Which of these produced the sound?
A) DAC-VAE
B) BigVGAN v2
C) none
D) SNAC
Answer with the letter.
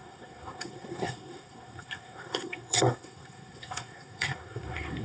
D